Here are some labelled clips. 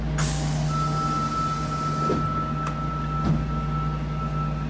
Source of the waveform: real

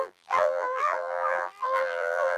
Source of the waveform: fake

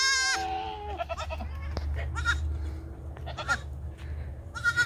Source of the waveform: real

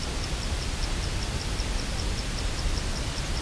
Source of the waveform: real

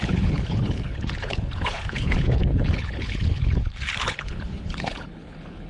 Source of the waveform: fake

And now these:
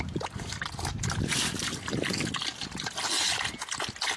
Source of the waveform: real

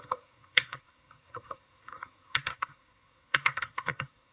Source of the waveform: fake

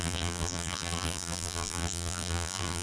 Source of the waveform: fake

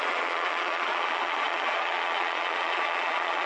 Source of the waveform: fake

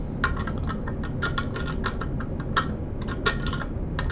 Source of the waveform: real